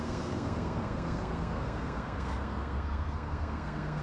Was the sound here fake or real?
fake